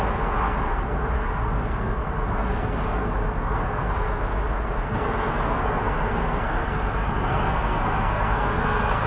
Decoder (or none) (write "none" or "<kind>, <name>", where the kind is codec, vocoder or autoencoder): codec, SNAC